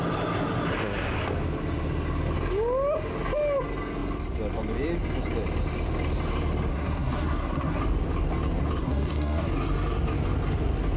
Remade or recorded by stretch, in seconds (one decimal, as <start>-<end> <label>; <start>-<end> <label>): 0.0-6.7 recorded; 6.7-7.8 remade; 7.8-8.8 recorded; 8.8-9.5 remade; 9.5-11.0 recorded